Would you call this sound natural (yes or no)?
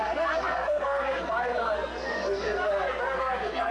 no